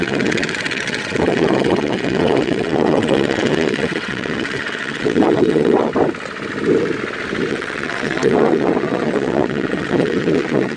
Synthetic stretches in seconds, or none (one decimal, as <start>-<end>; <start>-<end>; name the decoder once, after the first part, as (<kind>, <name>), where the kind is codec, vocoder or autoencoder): 0.0-5.9 (vocoder, WaveNeXt); 7.5-10.8